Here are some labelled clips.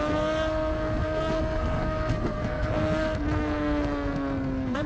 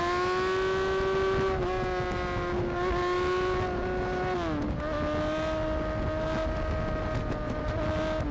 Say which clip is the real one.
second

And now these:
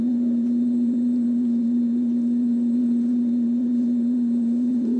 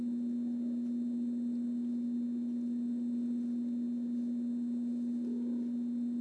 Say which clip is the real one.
second